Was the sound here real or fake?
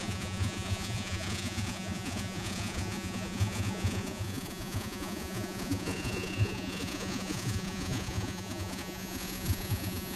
fake